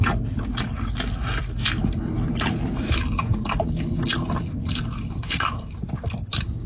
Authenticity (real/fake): real